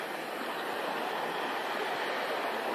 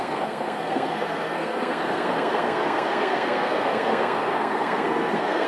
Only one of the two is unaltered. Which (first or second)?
first